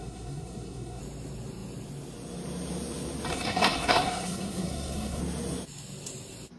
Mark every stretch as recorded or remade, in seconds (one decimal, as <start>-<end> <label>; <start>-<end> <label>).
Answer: 0.0-1.0 remade; 1.0-3.3 recorded; 3.3-5.2 remade; 5.2-6.6 recorded